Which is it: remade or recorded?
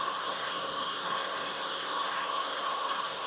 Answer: remade